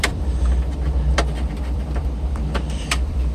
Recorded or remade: remade